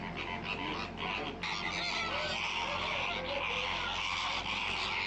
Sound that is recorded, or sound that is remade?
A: recorded